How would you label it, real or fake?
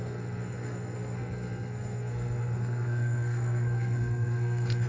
fake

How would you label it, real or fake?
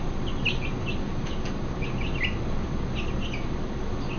real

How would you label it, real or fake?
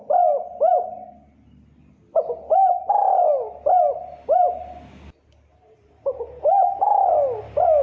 real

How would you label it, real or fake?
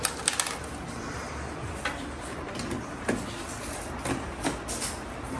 real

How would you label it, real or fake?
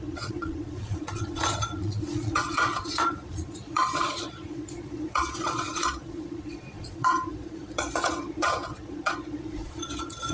fake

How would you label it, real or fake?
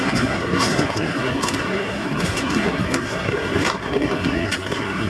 fake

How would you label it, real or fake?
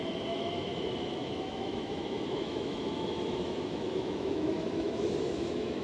fake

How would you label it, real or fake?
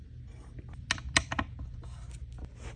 real